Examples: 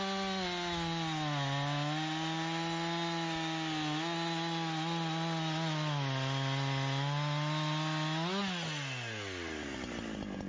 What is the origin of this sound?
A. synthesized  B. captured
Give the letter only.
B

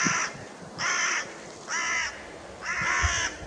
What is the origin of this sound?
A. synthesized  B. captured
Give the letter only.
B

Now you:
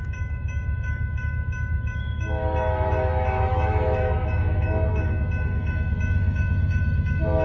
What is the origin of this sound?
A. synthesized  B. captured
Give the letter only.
A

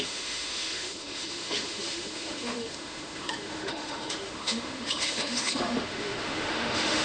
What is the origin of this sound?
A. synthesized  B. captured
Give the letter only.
A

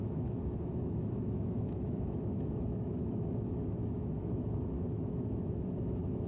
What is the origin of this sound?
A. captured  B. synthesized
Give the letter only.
B